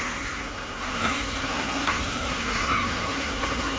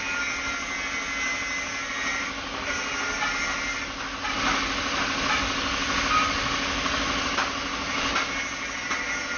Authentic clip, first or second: second